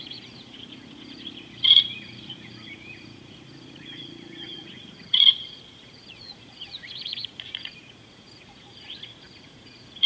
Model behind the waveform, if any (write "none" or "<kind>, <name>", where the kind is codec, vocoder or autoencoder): vocoder, Vocos